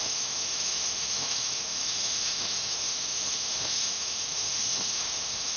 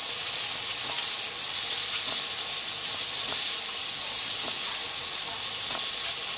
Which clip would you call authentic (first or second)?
second